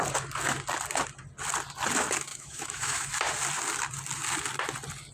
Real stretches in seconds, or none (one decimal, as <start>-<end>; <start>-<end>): 0.0-2.3; 3.1-5.1